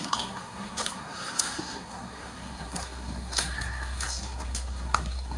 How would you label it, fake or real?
fake